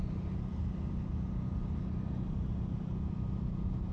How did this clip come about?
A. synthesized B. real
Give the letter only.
B